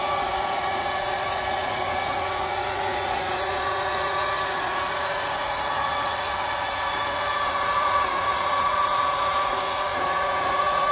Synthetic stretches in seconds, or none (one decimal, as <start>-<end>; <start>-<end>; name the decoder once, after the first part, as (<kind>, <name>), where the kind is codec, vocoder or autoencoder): 0.0-10.9 (vocoder, Vocos)